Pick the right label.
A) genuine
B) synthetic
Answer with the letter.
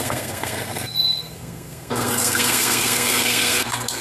B